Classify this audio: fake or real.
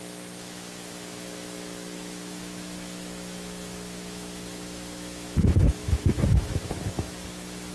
fake